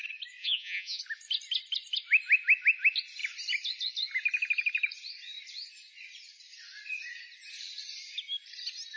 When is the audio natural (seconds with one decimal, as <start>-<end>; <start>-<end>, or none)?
0.0-0.4; 1.0-9.0